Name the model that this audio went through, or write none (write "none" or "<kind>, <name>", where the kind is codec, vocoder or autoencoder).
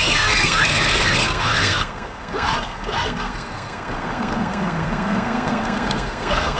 codec, SNAC